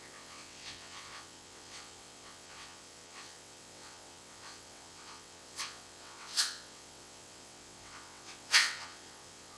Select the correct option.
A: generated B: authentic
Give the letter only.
A